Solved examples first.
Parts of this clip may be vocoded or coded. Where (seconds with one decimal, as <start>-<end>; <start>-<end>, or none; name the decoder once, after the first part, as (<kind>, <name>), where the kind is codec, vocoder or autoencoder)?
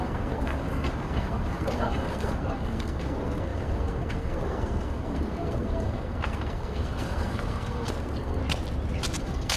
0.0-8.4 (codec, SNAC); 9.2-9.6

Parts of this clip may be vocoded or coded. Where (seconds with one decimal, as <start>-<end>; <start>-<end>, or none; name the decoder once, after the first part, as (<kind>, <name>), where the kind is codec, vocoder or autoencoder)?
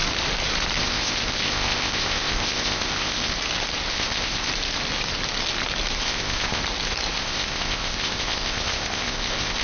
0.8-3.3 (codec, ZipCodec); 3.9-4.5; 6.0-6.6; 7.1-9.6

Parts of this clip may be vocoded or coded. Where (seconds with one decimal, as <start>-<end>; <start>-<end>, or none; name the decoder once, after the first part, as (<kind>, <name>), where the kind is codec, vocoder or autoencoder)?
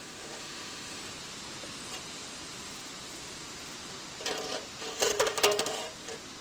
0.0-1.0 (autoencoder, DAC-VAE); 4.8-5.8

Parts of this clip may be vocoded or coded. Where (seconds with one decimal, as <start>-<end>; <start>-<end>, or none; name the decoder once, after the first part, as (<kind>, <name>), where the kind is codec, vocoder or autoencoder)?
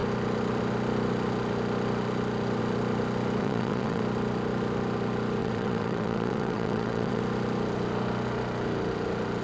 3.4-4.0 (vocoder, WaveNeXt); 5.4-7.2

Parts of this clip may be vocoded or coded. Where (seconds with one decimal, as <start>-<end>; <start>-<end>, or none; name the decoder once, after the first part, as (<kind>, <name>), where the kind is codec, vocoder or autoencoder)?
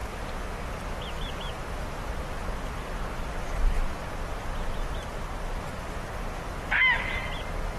none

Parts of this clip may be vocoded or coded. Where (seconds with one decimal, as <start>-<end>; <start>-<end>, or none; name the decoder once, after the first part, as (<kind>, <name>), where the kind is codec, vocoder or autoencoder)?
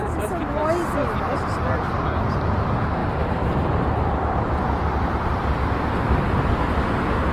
none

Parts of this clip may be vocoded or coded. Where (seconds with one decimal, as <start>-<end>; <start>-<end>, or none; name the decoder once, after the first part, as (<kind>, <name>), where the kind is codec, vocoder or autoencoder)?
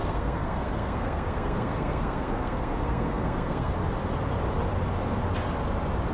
0.0-3.7 (codec, SNAC)